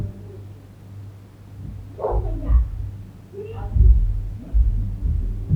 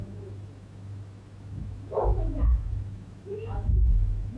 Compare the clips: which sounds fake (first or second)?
second